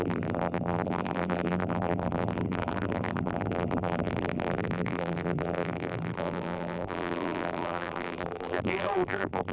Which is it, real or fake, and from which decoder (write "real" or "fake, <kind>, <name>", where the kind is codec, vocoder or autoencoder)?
fake, vocoder, BigVGAN v2